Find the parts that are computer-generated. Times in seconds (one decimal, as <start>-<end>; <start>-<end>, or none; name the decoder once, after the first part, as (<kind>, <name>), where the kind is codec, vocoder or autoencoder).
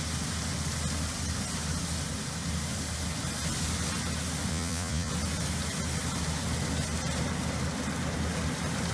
4.5-5.1 (vocoder, Vocos)